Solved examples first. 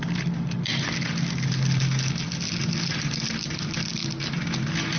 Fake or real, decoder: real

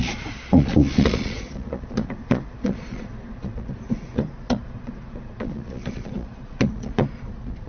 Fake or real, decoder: fake, vocoder, Vocos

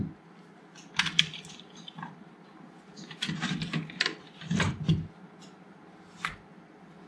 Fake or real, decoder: real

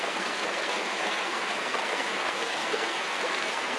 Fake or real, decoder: fake, codec, SNAC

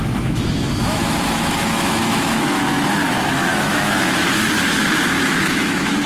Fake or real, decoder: fake, autoencoder, DAC-VAE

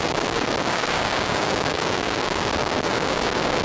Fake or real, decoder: fake, codec, DAC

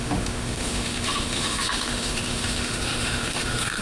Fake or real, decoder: fake, autoencoder, DAC-VAE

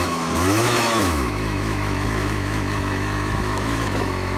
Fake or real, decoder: fake, autoencoder, DAC-VAE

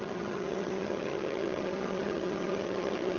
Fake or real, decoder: fake, vocoder, HiFi-GAN